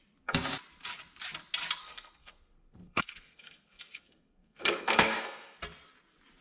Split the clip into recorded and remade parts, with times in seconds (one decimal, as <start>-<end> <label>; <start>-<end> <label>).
0.0-1.8 recorded; 1.8-5.6 remade; 5.6-6.4 recorded